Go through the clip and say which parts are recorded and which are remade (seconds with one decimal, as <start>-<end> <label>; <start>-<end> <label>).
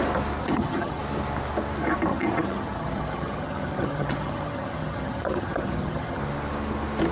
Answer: 0.0-0.4 recorded; 0.4-1.0 remade; 1.0-2.1 recorded; 2.1-6.2 remade; 6.2-7.1 recorded